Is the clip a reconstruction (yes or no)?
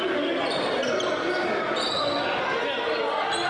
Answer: no